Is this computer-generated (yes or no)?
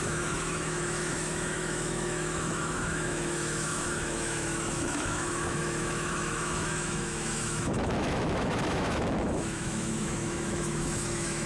yes